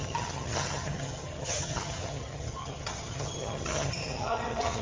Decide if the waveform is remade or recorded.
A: remade